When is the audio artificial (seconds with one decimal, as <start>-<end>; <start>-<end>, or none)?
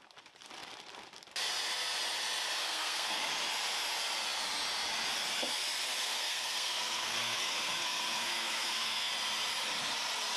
2.6-3.2; 6.0-9.1